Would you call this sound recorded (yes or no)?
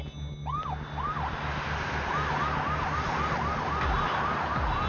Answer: yes